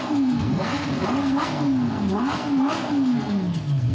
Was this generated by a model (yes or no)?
yes